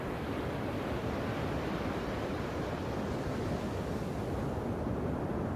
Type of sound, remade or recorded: recorded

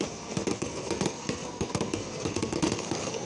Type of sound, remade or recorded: remade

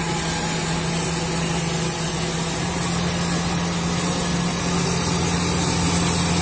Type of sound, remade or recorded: recorded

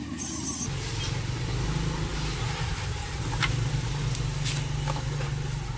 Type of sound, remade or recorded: recorded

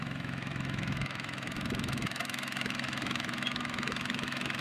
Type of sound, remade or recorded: remade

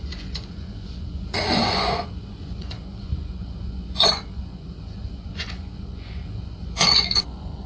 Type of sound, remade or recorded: remade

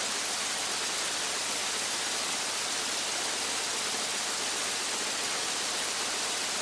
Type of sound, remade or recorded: recorded